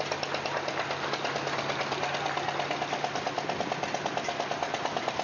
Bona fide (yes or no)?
yes